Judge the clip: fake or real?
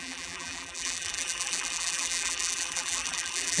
fake